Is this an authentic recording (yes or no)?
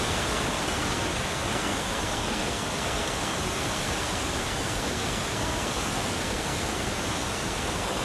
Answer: no